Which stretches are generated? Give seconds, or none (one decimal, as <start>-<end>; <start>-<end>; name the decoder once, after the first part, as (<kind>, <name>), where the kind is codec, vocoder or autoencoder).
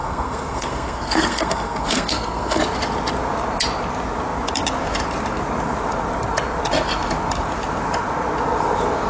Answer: 0.0-2.6 (codec, SNAC)